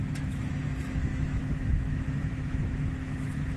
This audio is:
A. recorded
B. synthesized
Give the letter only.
B